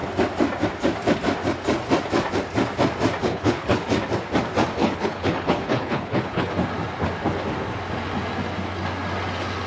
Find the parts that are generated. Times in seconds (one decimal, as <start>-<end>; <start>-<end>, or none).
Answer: 3.2-3.8; 4.8-6.5